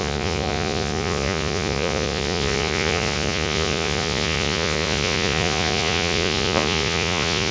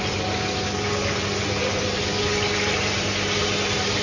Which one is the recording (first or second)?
second